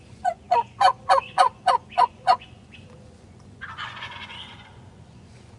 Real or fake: fake